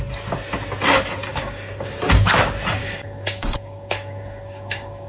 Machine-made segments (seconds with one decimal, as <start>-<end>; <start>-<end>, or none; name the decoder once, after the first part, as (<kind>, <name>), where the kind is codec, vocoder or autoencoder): 1.3-2.0 (codec, DAC); 2.8-5.1